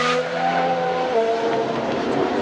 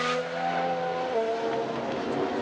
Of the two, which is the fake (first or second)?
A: first